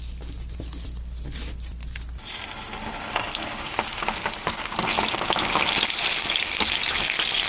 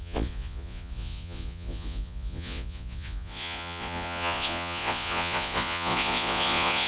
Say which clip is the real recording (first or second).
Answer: first